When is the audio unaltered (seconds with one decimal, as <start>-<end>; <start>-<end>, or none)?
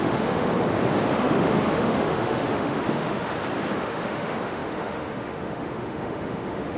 0.5-1.1; 3.3-3.8